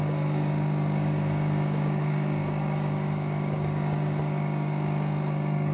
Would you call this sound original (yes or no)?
no